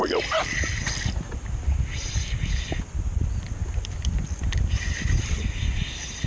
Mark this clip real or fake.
real